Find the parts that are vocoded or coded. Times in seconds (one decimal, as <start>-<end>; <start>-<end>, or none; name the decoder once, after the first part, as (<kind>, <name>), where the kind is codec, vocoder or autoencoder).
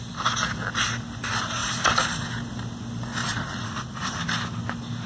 3.2-4.2 (vocoder, Vocos)